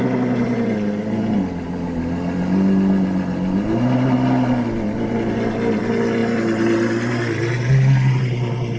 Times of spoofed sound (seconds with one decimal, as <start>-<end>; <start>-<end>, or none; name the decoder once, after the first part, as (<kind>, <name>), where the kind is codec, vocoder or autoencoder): none